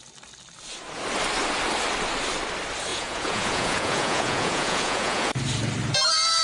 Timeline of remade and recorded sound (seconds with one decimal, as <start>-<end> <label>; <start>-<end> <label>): 0.0-2.9 recorded; 2.9-5.3 remade; 5.3-6.4 recorded